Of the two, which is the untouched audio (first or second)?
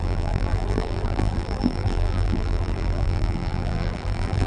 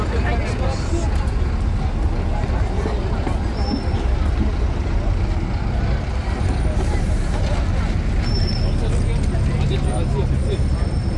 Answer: second